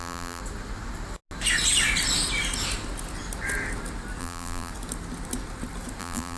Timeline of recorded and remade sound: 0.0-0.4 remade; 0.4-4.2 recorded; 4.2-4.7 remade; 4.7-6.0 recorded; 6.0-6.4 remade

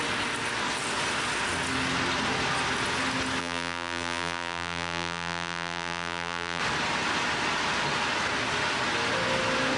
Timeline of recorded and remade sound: 0.0-3.4 recorded; 3.4-6.6 remade; 6.6-9.8 recorded

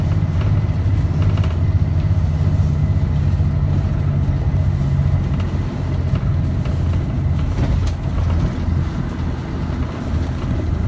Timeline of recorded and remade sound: 0.0-10.9 recorded

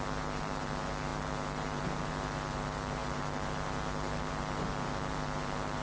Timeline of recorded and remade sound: 0.0-5.8 remade

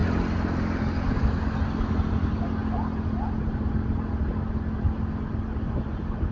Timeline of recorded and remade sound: 0.0-6.3 recorded

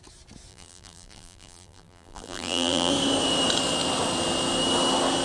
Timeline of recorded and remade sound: 0.0-0.5 recorded; 0.5-2.9 remade; 2.9-5.2 recorded

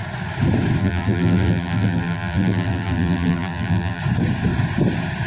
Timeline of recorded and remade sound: 0.0-0.8 recorded; 0.8-4.0 remade; 4.0-5.3 recorded

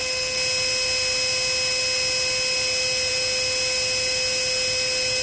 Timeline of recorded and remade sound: 0.0-5.2 recorded